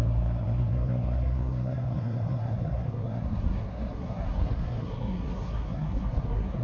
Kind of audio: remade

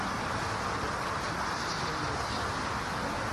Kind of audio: recorded